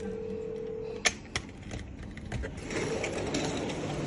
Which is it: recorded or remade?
recorded